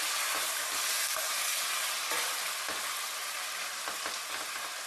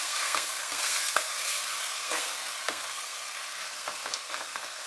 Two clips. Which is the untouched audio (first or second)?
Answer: first